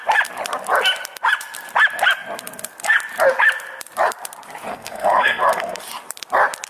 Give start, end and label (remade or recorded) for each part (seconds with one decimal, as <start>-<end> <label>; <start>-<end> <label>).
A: 0.0-4.7 recorded; 4.7-5.8 remade; 5.8-6.7 recorded